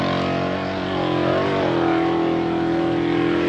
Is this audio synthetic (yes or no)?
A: no